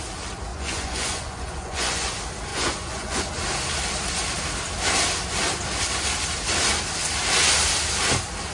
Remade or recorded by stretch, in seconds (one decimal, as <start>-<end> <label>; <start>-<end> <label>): 0.0-0.5 recorded; 0.5-2.1 remade; 2.1-2.5 recorded; 2.5-3.3 remade; 3.3-8.5 recorded